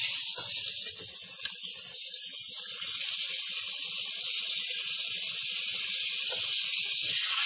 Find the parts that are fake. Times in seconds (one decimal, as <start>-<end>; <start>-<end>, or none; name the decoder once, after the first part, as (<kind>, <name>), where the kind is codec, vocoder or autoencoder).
none